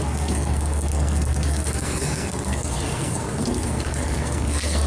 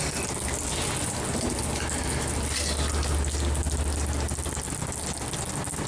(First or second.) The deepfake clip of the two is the first